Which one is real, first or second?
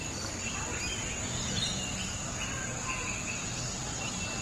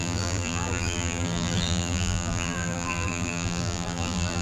first